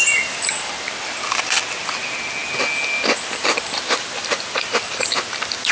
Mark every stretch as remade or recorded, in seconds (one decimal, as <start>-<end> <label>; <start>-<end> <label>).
0.0-5.7 recorded